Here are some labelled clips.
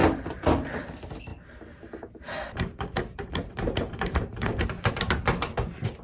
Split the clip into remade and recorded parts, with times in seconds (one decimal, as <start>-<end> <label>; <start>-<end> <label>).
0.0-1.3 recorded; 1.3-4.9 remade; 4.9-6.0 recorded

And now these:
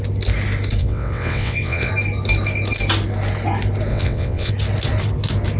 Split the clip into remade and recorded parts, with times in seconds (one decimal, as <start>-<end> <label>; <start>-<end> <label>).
0.0-0.8 recorded; 0.8-1.9 remade; 1.9-3.9 recorded; 3.9-4.5 remade; 4.5-5.6 recorded

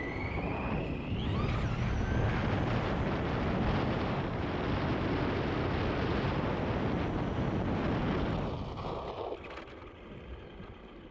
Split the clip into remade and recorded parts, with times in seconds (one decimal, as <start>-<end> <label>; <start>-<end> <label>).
0.0-11.1 recorded

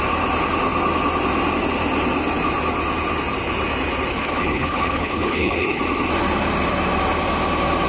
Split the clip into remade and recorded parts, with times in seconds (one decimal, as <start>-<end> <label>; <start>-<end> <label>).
0.0-4.1 recorded; 4.1-5.8 remade; 5.8-7.9 recorded

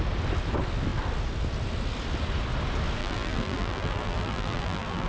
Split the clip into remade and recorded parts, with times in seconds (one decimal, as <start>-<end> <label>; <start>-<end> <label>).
0.0-3.0 recorded; 3.0-5.1 remade

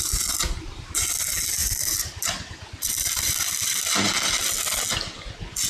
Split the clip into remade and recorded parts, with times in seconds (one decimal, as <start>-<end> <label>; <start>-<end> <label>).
0.0-1.6 recorded; 1.6-3.3 remade; 3.3-5.7 recorded